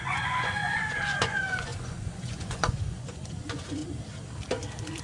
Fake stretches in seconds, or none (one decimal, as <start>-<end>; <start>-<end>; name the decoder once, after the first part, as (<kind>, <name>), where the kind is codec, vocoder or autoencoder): 0.0-3.8 (vocoder, Vocos)